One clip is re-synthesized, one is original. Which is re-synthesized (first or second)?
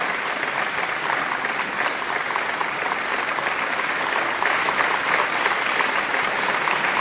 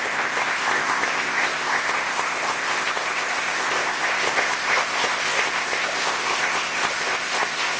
second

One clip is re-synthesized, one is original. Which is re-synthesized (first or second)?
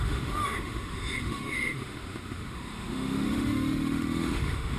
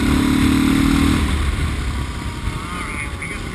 first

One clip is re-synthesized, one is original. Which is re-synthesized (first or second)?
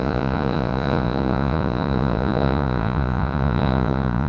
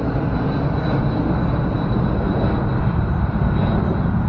first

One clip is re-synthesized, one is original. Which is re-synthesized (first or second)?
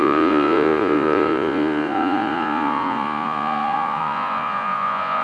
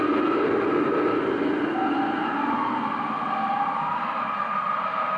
first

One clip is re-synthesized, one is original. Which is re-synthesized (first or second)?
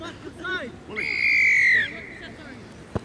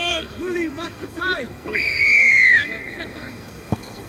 second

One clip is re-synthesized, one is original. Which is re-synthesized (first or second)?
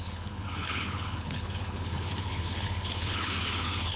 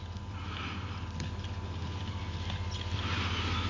first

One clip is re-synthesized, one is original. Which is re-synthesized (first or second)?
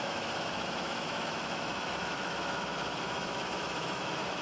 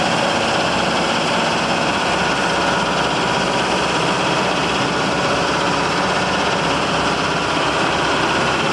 first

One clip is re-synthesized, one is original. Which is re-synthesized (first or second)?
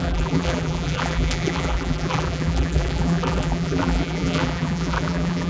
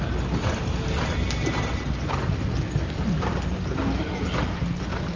first